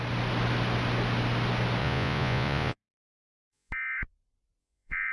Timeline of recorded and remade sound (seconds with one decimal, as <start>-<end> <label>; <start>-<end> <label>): 0.0-1.8 recorded; 1.8-3.7 remade; 3.7-4.6 recorded; 4.6-5.1 remade